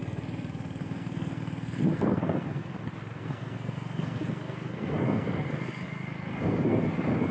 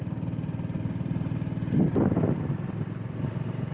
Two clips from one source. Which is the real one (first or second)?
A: second